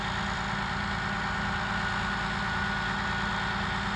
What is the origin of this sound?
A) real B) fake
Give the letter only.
A